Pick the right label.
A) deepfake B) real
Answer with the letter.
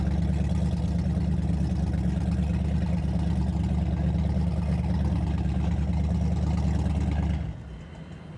B